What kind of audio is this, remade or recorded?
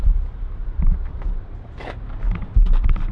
recorded